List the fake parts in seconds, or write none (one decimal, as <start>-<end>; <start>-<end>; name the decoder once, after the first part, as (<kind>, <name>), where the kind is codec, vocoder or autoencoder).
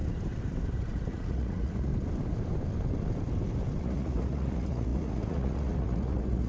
1.1-1.9 (vocoder, Vocos); 3.8-6.5